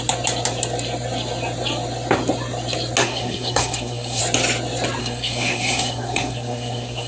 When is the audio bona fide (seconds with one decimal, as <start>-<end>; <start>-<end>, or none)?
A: 0.0-3.0; 4.2-5.0